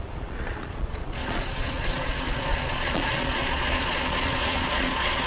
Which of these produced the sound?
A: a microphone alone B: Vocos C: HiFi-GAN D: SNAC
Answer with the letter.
B